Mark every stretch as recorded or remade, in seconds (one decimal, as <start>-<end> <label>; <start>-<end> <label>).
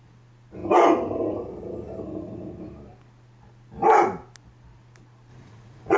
0.0-5.3 recorded; 5.3-6.0 remade